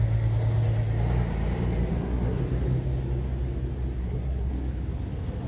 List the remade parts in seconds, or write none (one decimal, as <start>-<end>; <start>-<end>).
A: 1.9-2.4; 4.0-4.5